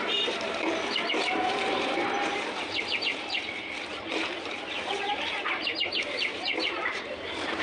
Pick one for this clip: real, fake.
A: fake